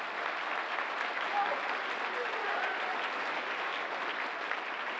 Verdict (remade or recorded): recorded